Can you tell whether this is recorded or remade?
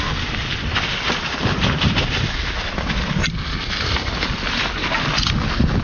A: recorded